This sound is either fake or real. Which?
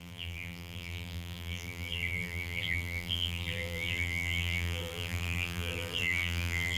fake